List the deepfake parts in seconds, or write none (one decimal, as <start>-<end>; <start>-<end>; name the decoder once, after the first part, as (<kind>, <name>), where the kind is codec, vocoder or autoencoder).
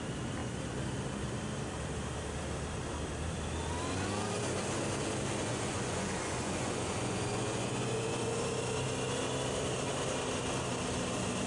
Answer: 5.4-8.4 (vocoder, Vocos)